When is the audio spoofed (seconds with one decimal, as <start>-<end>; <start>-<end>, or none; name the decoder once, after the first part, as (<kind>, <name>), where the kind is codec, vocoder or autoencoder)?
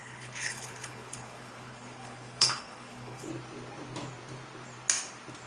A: 0.0-3.3 (codec, HILCodec)